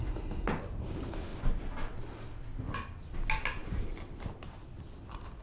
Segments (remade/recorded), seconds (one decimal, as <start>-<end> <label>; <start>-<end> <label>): 0.0-1.3 recorded; 1.3-3.0 remade; 3.0-3.6 recorded; 3.6-4.2 remade; 4.2-5.4 recorded